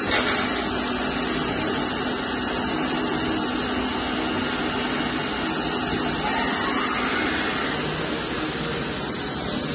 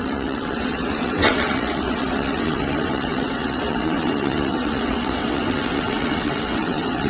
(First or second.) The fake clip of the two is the second